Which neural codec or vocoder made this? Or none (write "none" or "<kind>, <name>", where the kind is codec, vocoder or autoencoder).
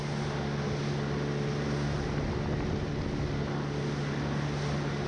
none